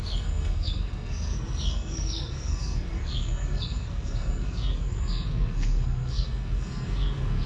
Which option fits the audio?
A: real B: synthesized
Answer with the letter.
B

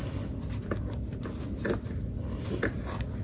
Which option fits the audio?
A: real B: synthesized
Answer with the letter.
A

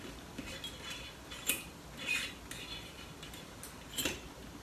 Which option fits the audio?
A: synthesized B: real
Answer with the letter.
B